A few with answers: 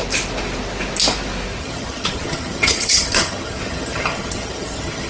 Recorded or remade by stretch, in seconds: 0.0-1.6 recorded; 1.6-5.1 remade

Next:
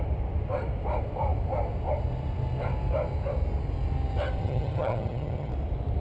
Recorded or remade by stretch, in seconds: 0.0-4.4 recorded; 4.4-5.5 remade; 5.5-6.0 recorded

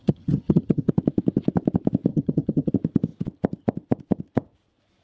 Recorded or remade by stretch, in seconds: 0.0-0.9 remade; 0.9-2.1 recorded; 2.1-2.7 remade; 2.7-5.0 recorded

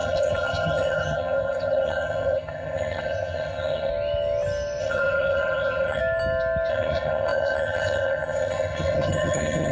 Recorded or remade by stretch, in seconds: 0.0-3.9 remade; 3.9-4.8 recorded; 4.8-6.0 remade; 6.0-6.7 recorded; 6.7-9.7 remade

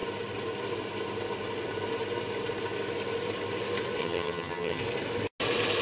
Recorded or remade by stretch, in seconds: 0.0-4.0 recorded; 4.0-4.8 remade; 4.8-5.8 recorded

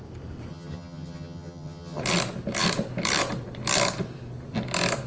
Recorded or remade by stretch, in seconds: 0.0-0.5 recorded; 0.5-2.0 remade; 2.0-5.1 recorded